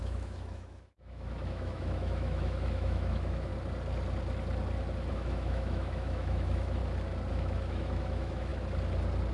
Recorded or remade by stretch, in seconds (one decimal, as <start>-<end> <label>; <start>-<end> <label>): 0.0-3.5 remade; 3.5-5.1 recorded; 5.1-6.8 remade; 6.8-7.3 recorded; 7.3-8.5 remade; 8.5-9.3 recorded